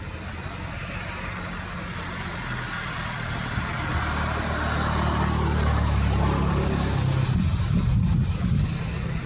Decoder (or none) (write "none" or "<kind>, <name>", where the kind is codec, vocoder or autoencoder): none